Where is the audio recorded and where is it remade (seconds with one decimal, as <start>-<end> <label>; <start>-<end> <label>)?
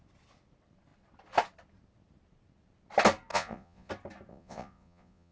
0.0-3.3 recorded; 3.3-3.9 remade; 3.9-4.3 recorded; 4.3-5.3 remade